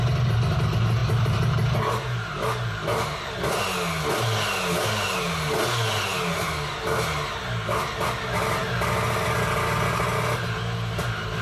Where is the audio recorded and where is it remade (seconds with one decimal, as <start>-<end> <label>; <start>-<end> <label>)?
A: 0.0-1.0 recorded; 1.0-3.3 remade; 3.3-11.4 recorded